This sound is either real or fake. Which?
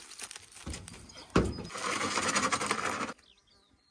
real